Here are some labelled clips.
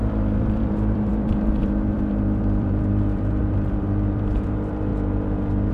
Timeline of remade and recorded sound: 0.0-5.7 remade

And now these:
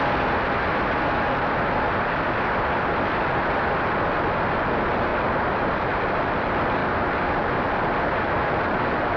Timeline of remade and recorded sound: 0.0-5.1 recorded; 5.1-5.8 remade; 5.8-9.2 recorded

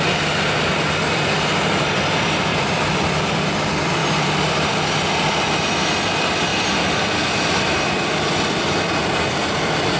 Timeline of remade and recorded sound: 0.0-6.5 remade; 6.5-7.6 recorded; 7.6-10.0 remade

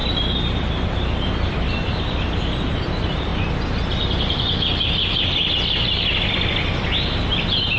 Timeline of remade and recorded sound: 0.0-7.8 remade